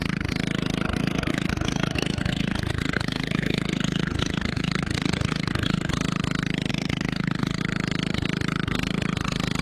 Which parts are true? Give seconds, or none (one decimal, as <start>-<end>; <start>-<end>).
0.0-1.0; 5.9-6.7; 7.6-9.6